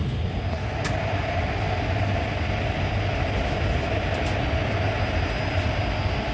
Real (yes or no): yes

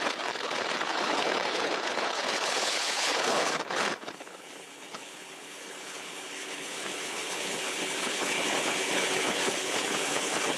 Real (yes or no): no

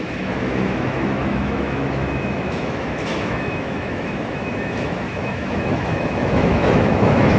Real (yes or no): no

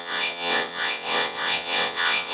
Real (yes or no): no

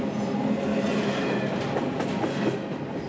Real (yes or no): yes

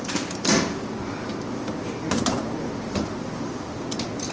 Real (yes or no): yes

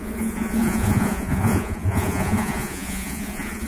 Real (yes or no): no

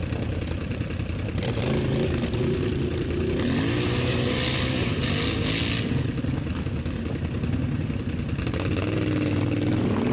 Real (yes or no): yes